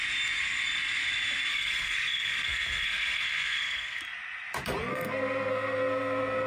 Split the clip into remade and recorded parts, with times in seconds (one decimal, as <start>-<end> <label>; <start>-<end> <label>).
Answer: 0.0-1.5 recorded; 1.5-4.0 remade; 4.0-4.9 recorded; 4.9-6.5 remade